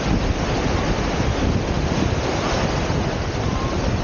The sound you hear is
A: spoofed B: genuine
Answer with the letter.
B